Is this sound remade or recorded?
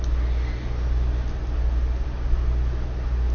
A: recorded